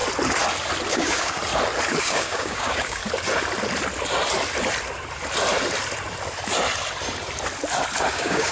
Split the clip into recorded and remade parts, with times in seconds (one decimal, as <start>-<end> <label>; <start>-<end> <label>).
0.0-0.9 recorded; 0.9-1.4 remade; 1.4-2.0 recorded; 2.0-3.0 remade; 3.0-8.1 recorded; 8.1-8.5 remade

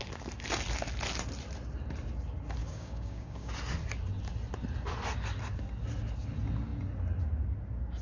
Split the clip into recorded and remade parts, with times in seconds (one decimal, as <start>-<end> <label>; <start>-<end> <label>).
0.0-2.6 recorded; 2.6-3.5 remade; 3.5-8.0 recorded

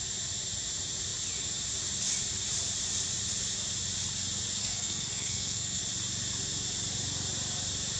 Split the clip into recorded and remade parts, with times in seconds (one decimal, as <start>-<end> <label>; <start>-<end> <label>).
0.0-4.6 recorded; 4.6-5.8 remade; 5.8-8.0 recorded

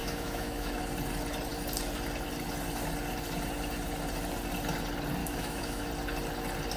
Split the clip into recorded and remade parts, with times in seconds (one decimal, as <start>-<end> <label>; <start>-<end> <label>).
0.0-0.8 remade; 0.8-5.2 recorded; 5.2-5.9 remade; 5.9-6.8 recorded

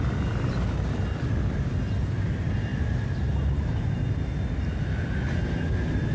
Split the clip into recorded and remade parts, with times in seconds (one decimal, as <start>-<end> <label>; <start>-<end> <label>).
0.0-6.1 recorded

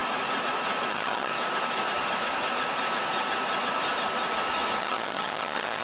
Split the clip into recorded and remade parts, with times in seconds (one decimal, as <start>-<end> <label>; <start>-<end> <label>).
0.0-0.9 recorded; 0.9-1.3 remade; 1.3-4.8 recorded; 4.8-5.8 remade

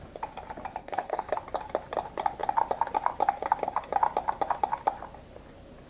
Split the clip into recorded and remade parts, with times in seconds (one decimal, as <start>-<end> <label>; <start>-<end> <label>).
0.0-0.8 recorded; 0.8-1.3 remade; 1.3-5.9 recorded